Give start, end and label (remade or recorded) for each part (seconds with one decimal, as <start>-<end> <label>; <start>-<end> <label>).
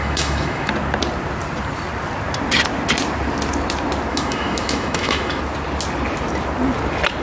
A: 0.0-0.7 remade; 0.7-4.1 recorded; 4.1-5.4 remade; 5.4-7.2 recorded